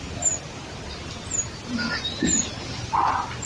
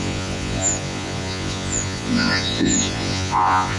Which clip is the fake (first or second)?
second